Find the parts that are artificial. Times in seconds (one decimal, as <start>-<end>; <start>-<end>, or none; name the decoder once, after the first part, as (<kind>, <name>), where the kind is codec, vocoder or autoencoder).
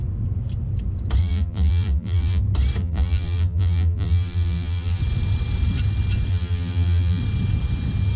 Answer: 1.2-2.4 (vocoder, BigVGAN v2); 2.8-5.0; 6.3-7.2